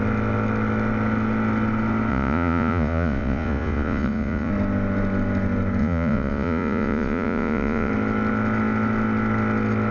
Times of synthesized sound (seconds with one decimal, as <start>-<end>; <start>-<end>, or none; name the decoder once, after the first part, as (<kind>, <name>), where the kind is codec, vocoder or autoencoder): 2.1-4.5 (vocoder, Vocos); 5.8-7.9